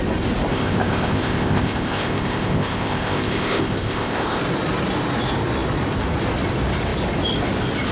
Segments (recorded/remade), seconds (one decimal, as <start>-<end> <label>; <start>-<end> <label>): 0.0-0.5 recorded; 0.5-4.4 remade; 4.4-7.9 recorded